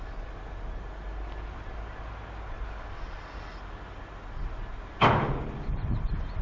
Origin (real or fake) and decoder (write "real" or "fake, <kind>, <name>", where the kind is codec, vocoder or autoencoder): real